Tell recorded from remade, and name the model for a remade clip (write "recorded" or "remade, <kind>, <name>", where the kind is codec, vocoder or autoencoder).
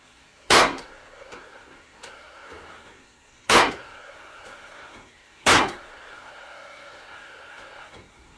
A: remade, codec, SNAC